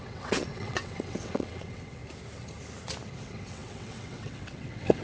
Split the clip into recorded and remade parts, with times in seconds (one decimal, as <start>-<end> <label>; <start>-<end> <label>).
0.0-2.0 remade; 2.0-3.2 recorded; 3.2-5.0 remade